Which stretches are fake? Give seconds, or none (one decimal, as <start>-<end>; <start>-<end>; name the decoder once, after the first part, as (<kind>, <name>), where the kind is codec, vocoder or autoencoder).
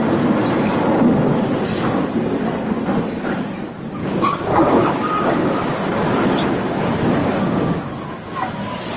4.0-6.1 (codec, DAC); 7.2-7.8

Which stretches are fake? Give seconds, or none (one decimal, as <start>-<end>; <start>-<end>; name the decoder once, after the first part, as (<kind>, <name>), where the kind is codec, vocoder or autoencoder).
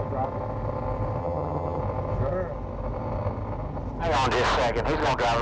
1.2-1.8 (vocoder, HiFi-GAN)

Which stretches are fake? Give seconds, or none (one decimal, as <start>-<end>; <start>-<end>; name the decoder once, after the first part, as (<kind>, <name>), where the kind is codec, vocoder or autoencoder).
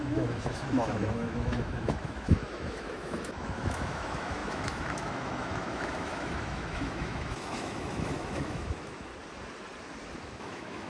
0.0-9.1 (autoencoder, DAC-VAE); 10.2-10.9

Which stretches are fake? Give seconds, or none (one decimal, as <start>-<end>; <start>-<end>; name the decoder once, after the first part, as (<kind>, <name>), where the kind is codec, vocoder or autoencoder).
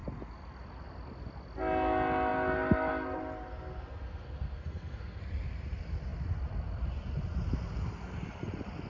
3.5-5.2 (codec, SNAC)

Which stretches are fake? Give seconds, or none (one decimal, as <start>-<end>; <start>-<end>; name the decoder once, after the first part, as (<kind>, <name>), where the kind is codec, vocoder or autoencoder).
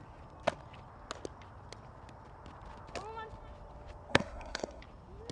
4.1-4.8 (codec, SNAC)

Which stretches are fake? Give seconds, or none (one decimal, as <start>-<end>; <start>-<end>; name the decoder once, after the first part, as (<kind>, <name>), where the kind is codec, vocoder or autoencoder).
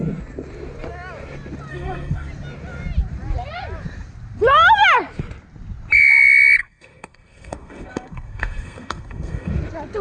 1.7-2.3 (codec, SNAC); 6.6-9.5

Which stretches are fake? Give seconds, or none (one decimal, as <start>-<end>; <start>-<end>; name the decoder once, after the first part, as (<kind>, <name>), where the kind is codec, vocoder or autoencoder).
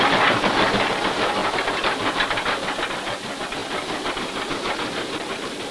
none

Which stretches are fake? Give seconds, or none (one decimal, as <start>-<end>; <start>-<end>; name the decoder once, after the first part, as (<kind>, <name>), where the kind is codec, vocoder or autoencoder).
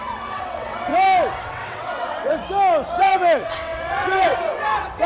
0.0-0.9 (vocoder, WaveNeXt); 1.4-2.4; 3.0-5.1